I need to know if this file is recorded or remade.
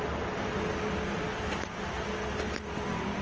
recorded